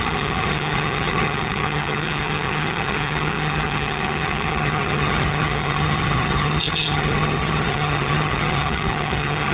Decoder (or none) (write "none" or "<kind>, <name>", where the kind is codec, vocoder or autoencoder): vocoder, HiFi-GAN